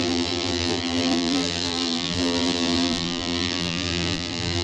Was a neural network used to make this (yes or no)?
yes